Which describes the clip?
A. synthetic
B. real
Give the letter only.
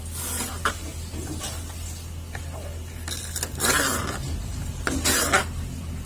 B